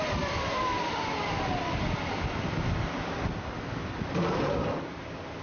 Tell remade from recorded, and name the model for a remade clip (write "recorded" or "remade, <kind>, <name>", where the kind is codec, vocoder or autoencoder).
remade, vocoder, BigVGAN v2